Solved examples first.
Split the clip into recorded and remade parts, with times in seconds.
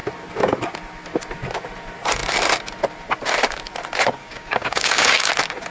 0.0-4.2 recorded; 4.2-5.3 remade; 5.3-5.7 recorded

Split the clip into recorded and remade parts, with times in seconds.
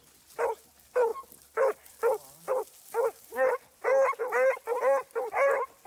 0.0-5.9 recorded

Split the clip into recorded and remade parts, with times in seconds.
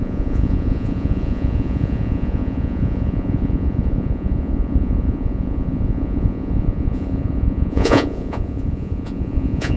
0.0-9.8 remade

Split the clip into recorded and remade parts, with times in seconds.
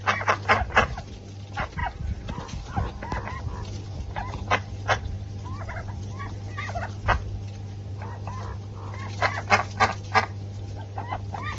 0.0-11.6 recorded